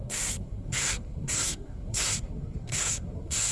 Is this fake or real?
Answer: fake